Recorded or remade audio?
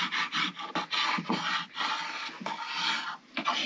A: remade